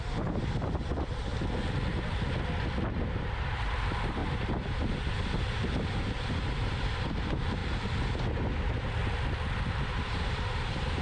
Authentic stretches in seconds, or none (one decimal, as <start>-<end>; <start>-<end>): 1.3-2.9; 7.6-9.8